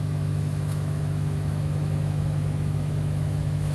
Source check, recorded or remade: remade